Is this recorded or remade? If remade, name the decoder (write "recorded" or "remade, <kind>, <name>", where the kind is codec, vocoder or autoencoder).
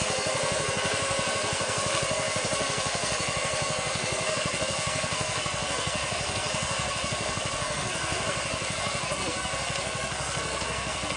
remade, codec, SNAC